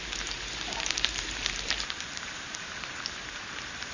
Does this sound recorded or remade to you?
remade